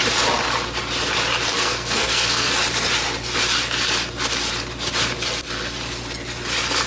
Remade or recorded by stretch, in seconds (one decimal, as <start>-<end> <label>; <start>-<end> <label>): 0.0-1.5 recorded; 1.5-2.5 remade; 2.5-6.9 recorded